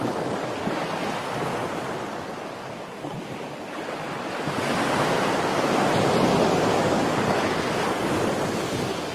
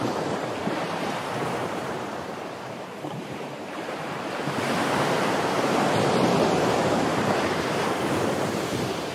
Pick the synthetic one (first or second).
second